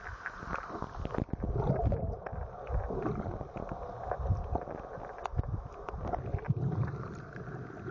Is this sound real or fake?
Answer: real